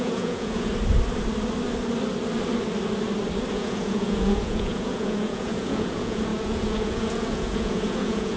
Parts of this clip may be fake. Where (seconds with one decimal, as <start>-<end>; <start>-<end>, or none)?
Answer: 0.0-0.7; 3.5-8.4